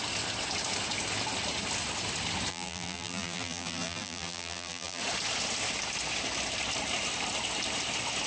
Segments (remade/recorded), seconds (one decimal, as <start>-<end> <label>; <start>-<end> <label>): 0.0-2.5 recorded; 2.5-5.0 remade; 5.0-8.3 recorded